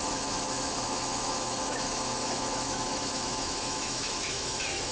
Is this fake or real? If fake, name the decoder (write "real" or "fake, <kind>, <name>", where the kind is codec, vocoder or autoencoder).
fake, autoencoder, DAC-VAE